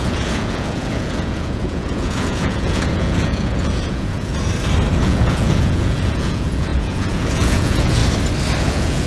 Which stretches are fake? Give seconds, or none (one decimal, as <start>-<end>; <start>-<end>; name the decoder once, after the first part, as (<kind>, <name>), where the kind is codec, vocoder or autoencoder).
0.0-4.3 (vocoder, Vocos); 5.0-8.0; 8.6-9.1